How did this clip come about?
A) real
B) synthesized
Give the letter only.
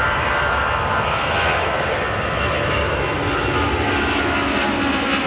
A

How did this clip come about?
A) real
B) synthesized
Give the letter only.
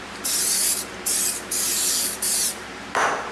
B